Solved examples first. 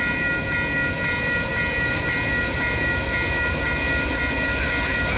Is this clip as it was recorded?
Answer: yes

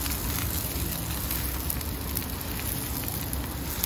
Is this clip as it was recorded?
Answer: yes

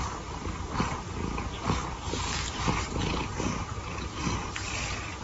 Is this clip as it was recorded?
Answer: yes